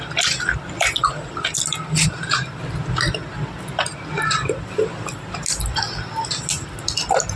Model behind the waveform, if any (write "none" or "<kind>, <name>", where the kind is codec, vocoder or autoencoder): none